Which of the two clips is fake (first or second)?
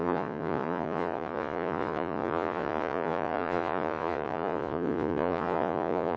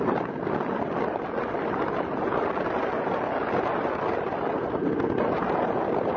first